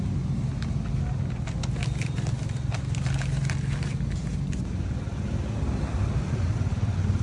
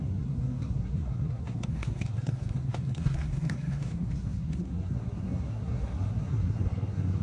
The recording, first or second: first